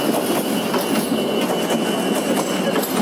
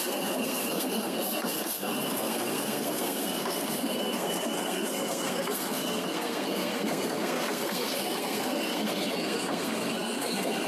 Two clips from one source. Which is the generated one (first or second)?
second